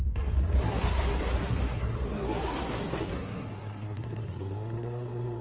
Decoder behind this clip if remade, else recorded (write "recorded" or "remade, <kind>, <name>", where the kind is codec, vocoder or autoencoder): remade, codec, SNAC